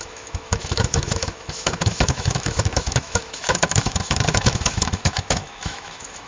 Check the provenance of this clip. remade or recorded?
remade